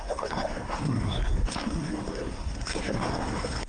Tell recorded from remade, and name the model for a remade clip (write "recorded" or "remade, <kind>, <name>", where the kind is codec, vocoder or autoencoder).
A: remade, codec, SNAC